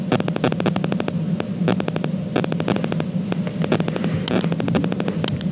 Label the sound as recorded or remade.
recorded